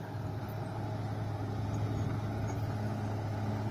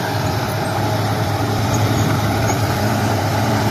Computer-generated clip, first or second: second